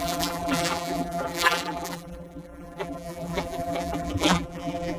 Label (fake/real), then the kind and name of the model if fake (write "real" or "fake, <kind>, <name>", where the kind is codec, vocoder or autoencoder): fake, vocoder, BigVGAN v2